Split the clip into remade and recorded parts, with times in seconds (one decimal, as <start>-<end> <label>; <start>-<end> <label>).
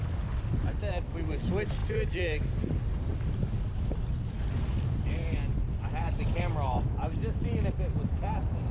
0.0-1.8 recorded; 1.8-3.6 remade; 3.6-8.7 recorded